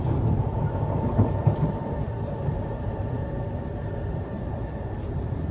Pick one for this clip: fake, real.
fake